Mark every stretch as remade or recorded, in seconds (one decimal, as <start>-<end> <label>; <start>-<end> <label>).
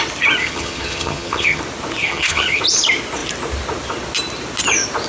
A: 0.0-0.4 recorded; 0.4-1.6 remade; 1.6-2.0 recorded; 2.0-2.6 remade; 2.6-5.1 recorded